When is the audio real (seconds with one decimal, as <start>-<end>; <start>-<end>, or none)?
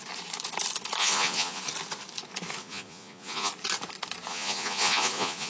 0.0-1.0; 1.6-2.6; 3.5-4.3